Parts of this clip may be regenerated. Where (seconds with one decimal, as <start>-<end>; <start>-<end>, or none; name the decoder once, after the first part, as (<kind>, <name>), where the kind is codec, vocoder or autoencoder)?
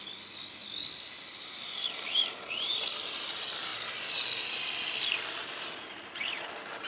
none